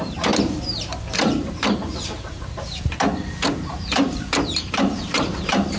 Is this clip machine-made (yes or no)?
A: yes